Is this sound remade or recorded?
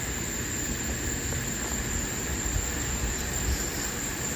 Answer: recorded